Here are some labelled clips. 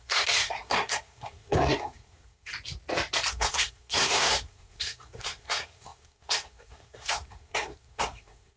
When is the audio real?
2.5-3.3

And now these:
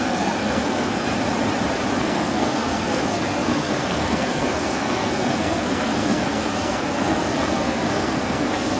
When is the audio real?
1.1-2.0